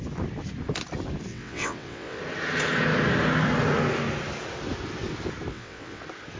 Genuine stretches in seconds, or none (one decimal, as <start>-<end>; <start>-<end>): 0.0-1.3; 2.2-5.5; 6.0-6.4